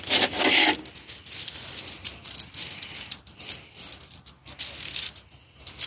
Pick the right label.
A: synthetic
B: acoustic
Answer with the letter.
B